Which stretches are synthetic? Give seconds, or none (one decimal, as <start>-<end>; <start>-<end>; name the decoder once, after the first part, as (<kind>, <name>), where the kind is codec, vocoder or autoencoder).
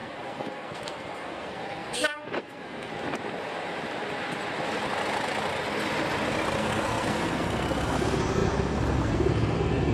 0.0-2.9 (codec, SNAC); 6.6-9.9